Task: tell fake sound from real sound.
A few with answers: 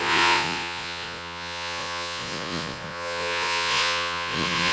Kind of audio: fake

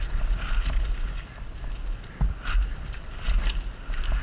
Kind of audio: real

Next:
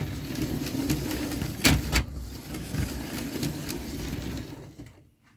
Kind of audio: real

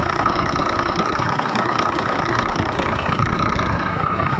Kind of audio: fake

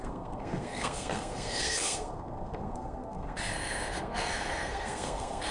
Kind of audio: fake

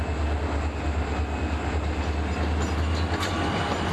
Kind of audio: real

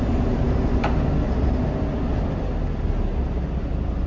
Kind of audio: real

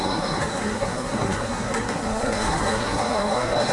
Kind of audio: fake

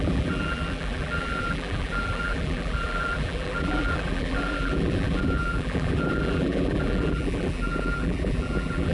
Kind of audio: fake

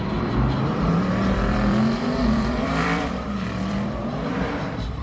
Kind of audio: fake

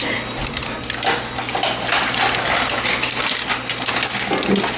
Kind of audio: real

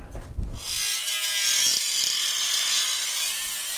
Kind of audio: real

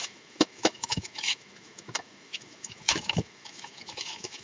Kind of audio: fake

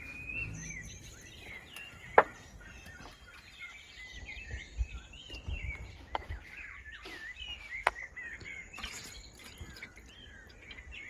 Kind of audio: real